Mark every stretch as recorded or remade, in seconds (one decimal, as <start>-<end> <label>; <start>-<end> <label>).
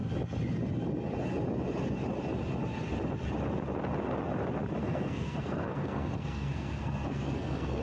0.0-4.8 recorded; 4.8-7.8 remade